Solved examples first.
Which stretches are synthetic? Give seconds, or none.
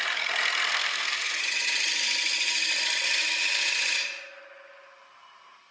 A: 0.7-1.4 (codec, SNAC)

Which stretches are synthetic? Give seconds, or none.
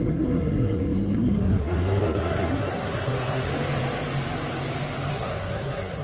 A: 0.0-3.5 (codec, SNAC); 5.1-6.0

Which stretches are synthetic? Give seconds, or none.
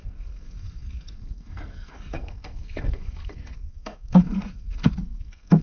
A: 0.0-5.6 (codec, SNAC)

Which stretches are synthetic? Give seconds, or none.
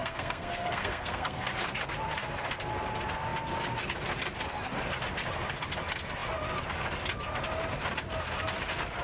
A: 0.0-1.5 (codec, SNAC)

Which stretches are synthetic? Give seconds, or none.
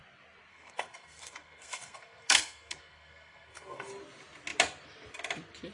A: 0.5-3.9 (codec, SNAC)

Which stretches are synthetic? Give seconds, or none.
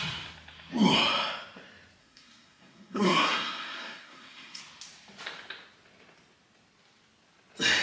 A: 2.0-4.6 (codec, SNAC)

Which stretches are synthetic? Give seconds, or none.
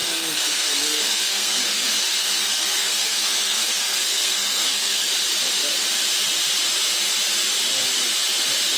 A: 0.0-5.1 (codec, SNAC)